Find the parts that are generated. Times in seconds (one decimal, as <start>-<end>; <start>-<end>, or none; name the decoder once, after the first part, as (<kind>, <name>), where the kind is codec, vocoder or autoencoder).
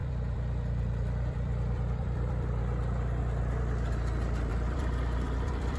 0.0-2.6 (vocoder, BigVGAN v2); 4.5-5.8